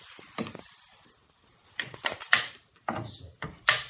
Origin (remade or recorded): remade